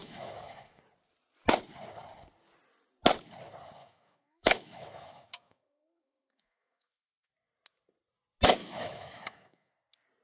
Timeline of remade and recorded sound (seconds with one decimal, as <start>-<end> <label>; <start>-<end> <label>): 0.0-0.8 remade; 0.8-3.8 recorded; 3.8-7.3 remade; 7.3-8.6 recorded; 8.6-9.7 remade; 9.7-10.2 recorded